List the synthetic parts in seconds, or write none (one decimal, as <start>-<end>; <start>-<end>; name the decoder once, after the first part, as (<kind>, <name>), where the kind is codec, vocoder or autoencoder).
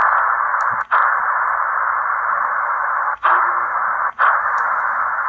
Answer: 2.3-3.8 (autoencoder, DAC-VAE); 4.4-5.3